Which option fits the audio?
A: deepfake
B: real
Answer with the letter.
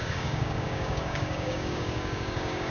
A